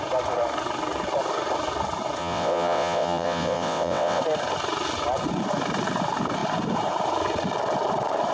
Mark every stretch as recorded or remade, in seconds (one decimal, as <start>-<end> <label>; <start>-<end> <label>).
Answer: 0.0-2.2 recorded; 2.2-4.2 remade; 4.2-8.3 recorded